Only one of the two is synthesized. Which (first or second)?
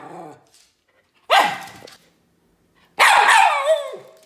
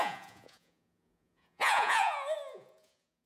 second